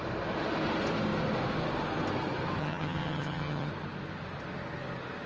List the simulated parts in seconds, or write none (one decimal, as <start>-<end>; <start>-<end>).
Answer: 2.6-3.7